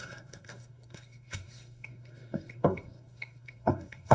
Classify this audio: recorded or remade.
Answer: remade